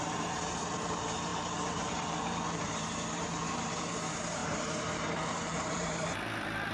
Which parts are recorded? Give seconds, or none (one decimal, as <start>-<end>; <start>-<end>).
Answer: none